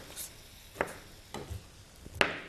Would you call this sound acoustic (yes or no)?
yes